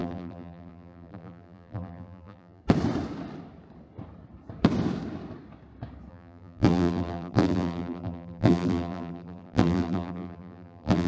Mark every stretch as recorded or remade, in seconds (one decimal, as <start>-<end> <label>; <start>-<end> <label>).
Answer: 0.0-2.6 remade; 2.6-6.1 recorded; 6.1-11.1 remade